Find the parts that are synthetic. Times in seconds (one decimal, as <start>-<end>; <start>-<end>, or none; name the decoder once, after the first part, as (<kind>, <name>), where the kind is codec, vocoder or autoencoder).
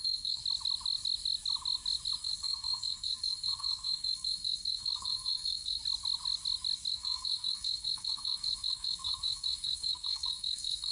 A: 0.0-0.4 (codec, SNAC); 2.2-5.8; 6.9-10.9